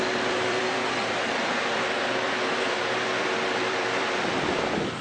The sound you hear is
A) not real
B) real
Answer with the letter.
A